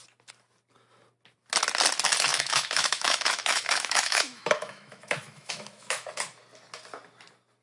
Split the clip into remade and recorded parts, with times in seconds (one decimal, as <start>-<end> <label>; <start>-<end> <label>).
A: 0.0-2.3 recorded; 2.3-6.1 remade; 6.1-7.6 recorded